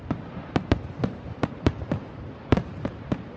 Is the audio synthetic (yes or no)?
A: yes